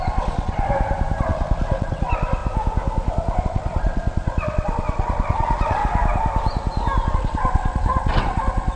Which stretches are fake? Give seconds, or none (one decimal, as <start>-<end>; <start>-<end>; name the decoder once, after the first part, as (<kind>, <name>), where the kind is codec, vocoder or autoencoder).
0.0-0.7 (vocoder, WaveNeXt); 1.2-2.4; 3.4-5.8; 7.1-8.8